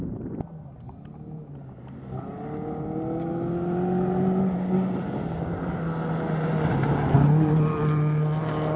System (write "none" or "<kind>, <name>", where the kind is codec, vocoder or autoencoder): none